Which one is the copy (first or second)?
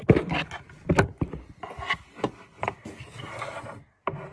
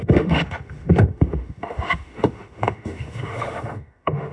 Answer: second